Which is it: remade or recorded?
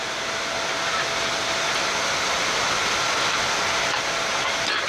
recorded